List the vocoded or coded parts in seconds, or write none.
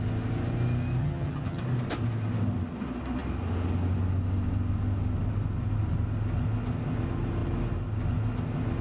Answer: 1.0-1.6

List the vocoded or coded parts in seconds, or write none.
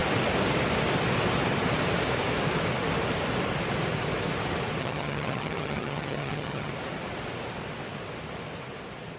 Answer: 4.8-6.7